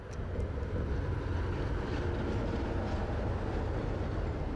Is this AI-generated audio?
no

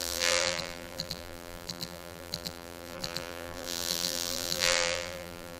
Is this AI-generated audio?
yes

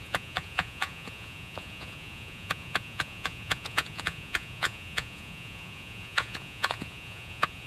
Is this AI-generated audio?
yes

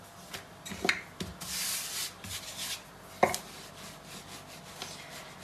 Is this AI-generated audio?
no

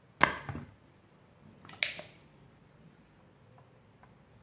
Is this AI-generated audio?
no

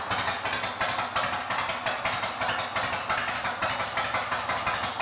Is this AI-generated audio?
no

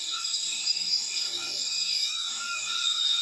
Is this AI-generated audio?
yes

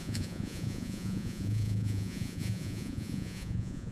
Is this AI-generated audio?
yes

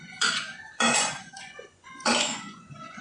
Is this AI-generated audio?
yes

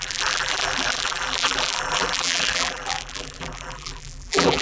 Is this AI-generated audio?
yes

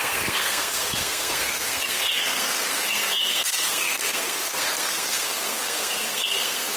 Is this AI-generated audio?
yes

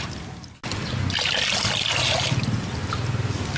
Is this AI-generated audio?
no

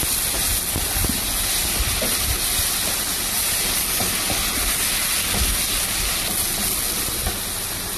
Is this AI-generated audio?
no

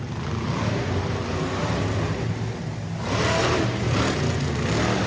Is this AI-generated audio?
no